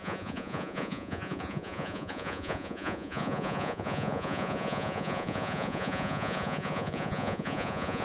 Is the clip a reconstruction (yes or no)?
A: yes